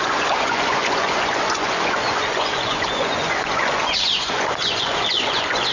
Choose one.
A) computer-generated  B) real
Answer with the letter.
A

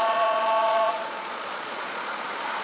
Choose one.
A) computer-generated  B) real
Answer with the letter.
A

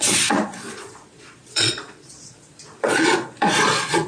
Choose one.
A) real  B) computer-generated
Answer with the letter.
B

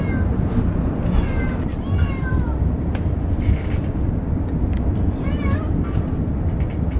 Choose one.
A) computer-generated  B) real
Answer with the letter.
B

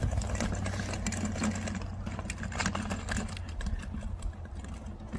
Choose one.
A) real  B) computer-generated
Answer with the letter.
A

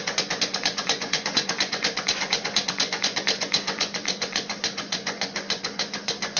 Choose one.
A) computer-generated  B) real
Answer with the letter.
A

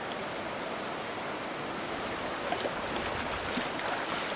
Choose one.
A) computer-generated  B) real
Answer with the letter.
B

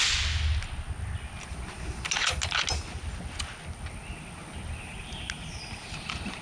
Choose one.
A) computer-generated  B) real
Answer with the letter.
B